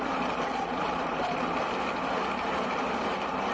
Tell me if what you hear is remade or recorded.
recorded